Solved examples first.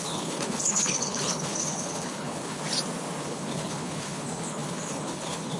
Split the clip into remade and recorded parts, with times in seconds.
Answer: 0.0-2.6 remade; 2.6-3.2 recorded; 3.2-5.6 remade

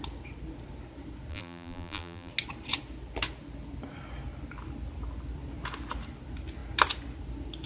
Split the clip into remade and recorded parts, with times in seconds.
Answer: 0.0-1.3 recorded; 1.3-2.3 remade; 2.3-7.7 recorded

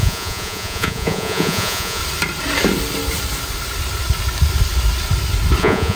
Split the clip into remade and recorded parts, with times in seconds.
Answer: 0.0-2.0 remade; 2.0-5.6 recorded; 5.6-6.0 remade

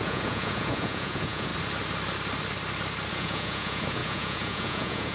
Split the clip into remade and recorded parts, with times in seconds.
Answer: 0.0-1.5 remade; 1.5-3.1 recorded; 3.1-5.1 remade

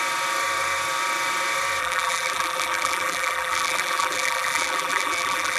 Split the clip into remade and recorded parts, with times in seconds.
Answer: 0.0-1.8 recorded; 1.8-5.6 remade

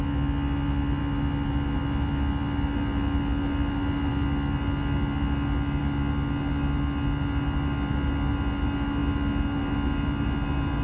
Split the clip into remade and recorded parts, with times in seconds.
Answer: 0.0-10.8 recorded

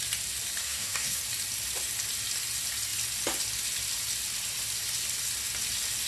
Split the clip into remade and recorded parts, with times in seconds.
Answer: 0.0-0.6 recorded; 0.6-1.2 remade; 1.2-6.1 recorded

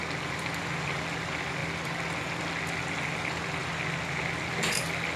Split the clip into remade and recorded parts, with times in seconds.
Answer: 0.0-5.2 recorded